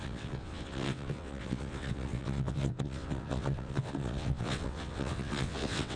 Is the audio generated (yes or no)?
yes